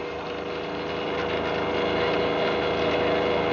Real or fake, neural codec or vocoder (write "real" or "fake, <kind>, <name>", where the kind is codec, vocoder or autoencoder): real